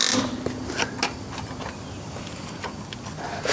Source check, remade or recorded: recorded